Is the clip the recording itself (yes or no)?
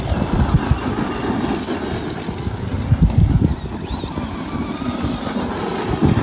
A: yes